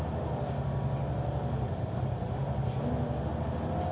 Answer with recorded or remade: recorded